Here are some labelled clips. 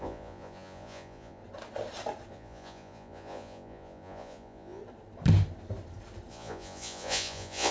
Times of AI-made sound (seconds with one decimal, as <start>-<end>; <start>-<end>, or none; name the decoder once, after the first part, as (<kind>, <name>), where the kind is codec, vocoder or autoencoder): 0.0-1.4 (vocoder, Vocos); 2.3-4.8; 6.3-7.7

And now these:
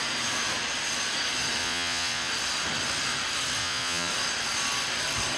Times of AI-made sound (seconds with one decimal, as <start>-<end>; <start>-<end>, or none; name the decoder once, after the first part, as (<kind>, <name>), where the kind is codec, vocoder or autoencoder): 1.6-2.3 (vocoder, Vocos); 3.6-4.1

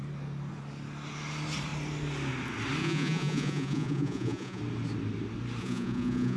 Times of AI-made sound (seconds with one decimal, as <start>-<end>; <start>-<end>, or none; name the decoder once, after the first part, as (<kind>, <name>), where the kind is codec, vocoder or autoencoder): 2.8-4.6 (vocoder, Vocos); 5.6-6.4

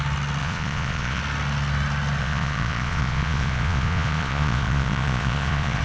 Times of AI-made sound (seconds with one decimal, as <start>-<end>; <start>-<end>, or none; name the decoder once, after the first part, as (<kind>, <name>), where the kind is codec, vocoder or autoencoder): 0.4-1.2 (vocoder, Vocos); 2.2-5.8